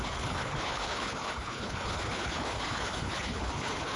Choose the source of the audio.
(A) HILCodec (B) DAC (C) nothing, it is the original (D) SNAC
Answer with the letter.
A